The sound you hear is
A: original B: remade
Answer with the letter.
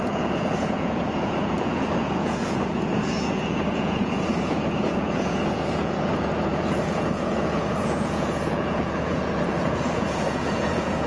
B